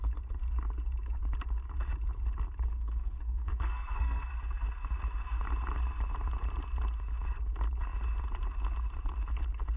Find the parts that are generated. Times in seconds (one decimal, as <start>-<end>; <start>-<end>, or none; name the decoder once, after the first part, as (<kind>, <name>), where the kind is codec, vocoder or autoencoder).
2.7-4.3 (codec, SNAC)